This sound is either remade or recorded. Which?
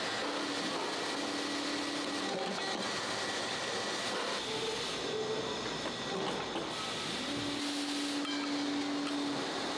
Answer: recorded